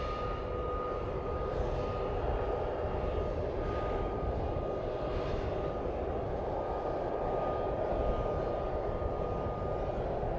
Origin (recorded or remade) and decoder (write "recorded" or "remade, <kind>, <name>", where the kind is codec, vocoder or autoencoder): recorded